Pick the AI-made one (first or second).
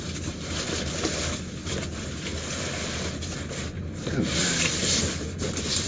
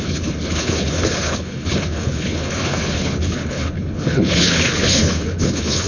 second